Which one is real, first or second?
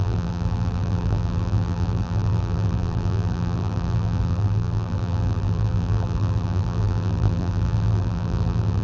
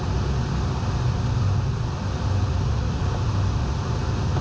second